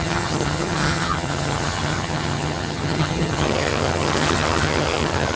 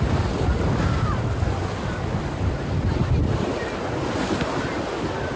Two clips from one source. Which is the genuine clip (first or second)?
second